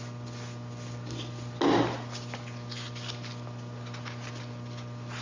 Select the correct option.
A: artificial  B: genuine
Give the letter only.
B